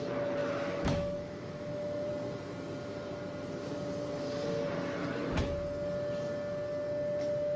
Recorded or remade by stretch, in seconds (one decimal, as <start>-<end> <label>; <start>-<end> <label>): 0.0-0.4 recorded; 0.4-2.1 remade; 2.1-7.6 recorded